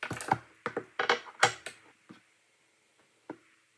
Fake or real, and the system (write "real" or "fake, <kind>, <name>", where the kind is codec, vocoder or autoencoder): real